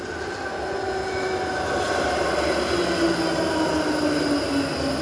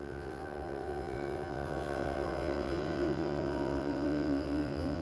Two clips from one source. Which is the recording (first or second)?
first